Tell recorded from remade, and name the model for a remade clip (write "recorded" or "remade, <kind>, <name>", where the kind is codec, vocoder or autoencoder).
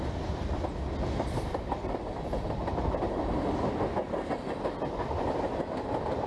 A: recorded